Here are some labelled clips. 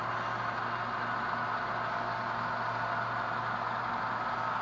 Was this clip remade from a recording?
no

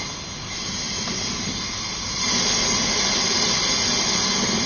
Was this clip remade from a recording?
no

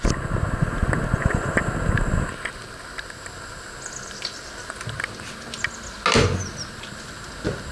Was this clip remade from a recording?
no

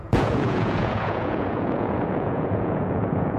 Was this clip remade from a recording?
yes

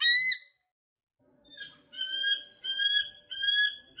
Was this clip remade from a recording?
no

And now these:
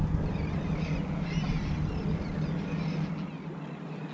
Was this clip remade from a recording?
no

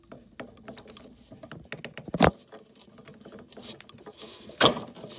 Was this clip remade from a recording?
no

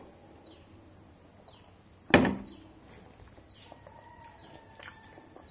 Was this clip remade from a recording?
no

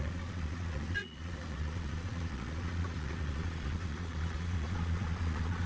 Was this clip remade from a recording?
yes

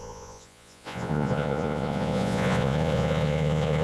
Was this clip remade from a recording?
yes